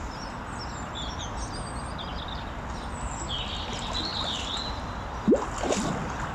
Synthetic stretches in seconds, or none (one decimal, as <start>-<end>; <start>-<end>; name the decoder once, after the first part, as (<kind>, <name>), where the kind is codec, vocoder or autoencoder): 4.1-4.7 (vocoder, BigVGAN v2)